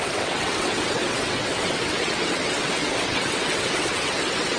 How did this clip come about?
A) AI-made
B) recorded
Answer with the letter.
A